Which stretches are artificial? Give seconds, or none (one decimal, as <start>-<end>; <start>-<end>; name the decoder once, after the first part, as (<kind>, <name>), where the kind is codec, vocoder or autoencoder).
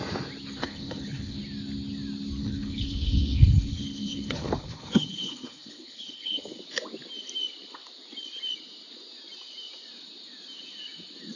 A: 0.6-1.4 (codec, HILCodec); 2.4-6.4